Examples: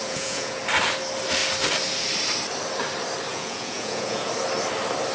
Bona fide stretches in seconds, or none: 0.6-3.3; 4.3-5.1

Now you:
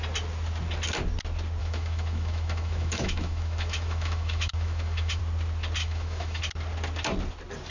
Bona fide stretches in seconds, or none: 0.0-1.6; 5.2-5.8; 6.4-7.7

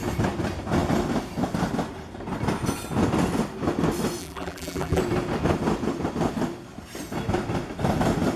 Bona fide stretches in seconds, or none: 0.0-4.2; 5.0-8.4

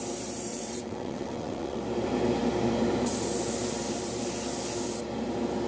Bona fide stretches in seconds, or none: 0.0-0.5; 1.8-5.7